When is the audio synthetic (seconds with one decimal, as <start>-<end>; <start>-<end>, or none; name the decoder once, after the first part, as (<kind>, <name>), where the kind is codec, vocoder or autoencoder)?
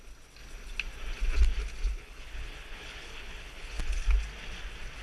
2.0-3.8 (codec, HILCodec)